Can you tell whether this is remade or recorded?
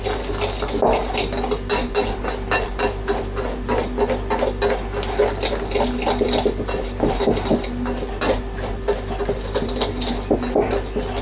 recorded